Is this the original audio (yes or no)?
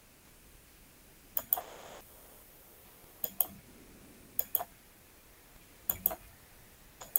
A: yes